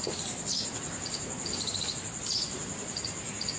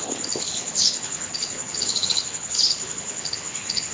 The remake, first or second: second